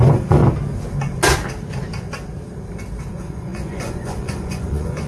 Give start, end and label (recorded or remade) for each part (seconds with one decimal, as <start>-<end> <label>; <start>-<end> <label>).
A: 0.0-0.4 remade; 0.4-3.1 recorded; 3.1-5.1 remade